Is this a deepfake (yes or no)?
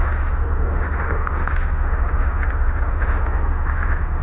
yes